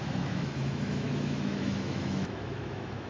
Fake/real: fake